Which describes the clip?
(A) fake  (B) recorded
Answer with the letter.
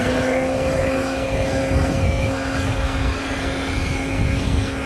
A